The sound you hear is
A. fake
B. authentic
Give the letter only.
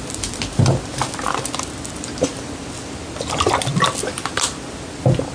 B